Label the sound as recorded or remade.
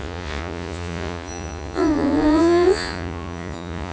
remade